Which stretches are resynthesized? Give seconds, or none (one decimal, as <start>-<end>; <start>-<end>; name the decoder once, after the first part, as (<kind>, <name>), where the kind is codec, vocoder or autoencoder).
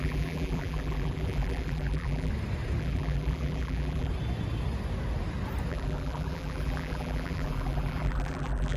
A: 0.0-2.3 (vocoder, BigVGAN v2); 2.8-4.1; 5.7-8.8